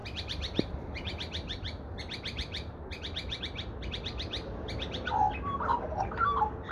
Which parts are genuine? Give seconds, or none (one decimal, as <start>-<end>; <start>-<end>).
0.0-6.7